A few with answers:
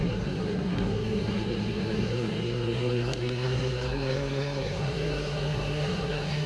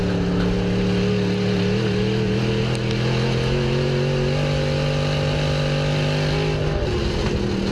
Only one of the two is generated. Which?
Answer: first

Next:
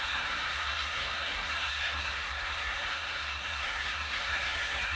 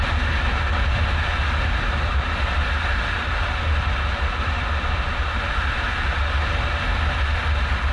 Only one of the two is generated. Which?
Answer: first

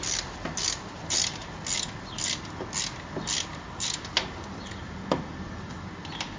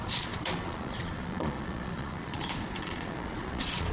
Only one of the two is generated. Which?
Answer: second